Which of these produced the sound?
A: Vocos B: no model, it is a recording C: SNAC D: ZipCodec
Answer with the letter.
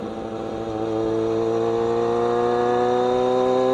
B